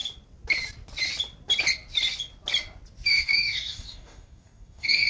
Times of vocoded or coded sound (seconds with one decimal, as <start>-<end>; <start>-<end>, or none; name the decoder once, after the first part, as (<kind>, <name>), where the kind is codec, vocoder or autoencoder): 3.1-5.1 (codec, DAC)

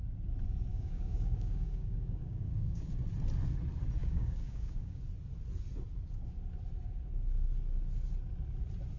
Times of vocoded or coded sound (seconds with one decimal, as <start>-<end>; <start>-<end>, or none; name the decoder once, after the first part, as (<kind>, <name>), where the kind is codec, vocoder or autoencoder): 0.7-2.9 (codec, DAC); 4.0-5.0

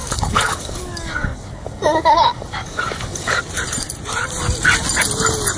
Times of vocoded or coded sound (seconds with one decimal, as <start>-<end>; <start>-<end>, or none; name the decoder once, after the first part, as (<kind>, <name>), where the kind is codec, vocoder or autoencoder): 0.0-3.4 (codec, DAC)